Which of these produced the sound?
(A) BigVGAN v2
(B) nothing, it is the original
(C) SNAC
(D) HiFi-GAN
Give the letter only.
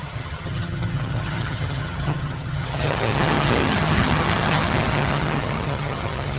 D